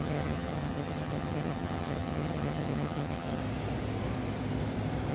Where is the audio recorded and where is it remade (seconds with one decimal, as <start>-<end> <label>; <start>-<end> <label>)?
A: 0.0-3.4 remade; 3.4-5.1 recorded